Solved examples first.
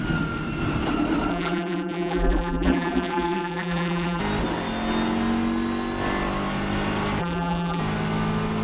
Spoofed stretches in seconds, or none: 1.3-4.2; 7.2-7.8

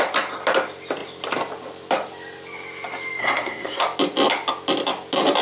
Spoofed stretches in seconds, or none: 3.2-3.8

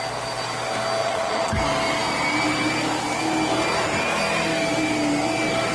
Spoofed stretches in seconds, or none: 1.0-1.5

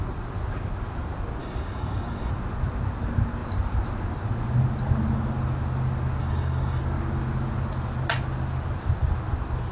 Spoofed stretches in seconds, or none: 1.4-2.3; 6.2-6.8

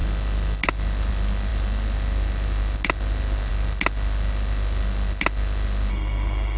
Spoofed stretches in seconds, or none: 5.9-6.6

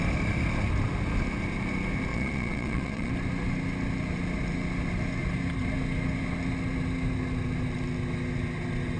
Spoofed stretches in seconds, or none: 2.1-3.1

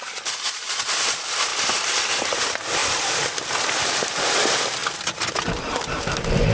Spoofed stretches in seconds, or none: 0.0-2.8; 4.3-4.8; 5.5-6.5

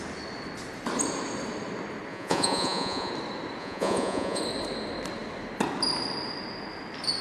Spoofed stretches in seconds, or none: 2.1-3.1; 3.6-4.4